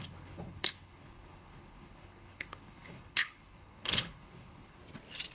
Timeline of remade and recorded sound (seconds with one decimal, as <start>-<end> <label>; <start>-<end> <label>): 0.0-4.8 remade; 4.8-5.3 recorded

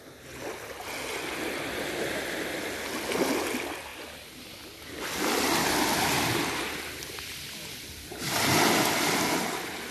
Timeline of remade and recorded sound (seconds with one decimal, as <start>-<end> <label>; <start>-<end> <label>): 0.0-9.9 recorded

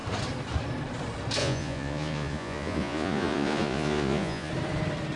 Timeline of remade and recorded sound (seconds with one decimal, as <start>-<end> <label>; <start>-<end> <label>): 0.0-1.4 recorded; 1.4-4.5 remade; 4.5-5.2 recorded